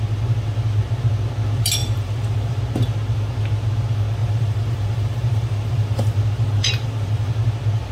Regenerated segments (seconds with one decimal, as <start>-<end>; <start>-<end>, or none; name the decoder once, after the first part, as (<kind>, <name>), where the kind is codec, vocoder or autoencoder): 1.8-2.6 (vocoder, BigVGAN v2); 4.2-7.3